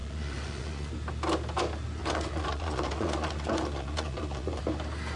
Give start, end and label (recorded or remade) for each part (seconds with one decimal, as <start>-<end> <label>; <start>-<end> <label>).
0.0-0.9 remade; 0.9-2.0 recorded; 2.0-4.6 remade; 4.6-5.2 recorded